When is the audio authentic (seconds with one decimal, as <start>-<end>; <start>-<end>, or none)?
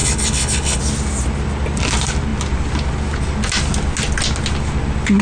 0.8-5.2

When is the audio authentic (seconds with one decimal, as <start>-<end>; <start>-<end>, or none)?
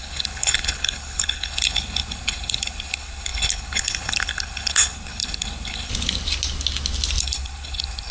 5.9-7.2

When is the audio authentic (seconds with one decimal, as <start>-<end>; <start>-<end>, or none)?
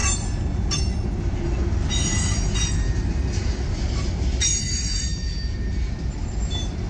0.0-6.9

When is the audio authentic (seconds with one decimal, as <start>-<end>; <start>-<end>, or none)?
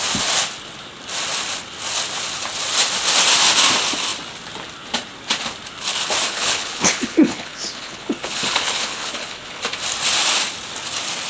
0.0-6.3; 9.6-11.3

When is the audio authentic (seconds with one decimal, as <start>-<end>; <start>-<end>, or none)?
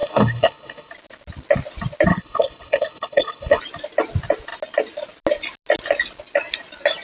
0.9-2.1; 3.6-7.0